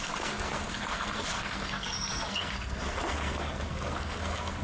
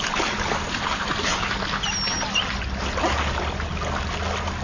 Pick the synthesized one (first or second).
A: first